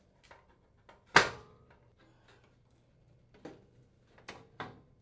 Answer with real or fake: real